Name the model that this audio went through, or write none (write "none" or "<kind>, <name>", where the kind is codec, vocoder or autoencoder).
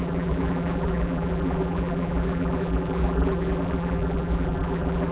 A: vocoder, BigVGAN v2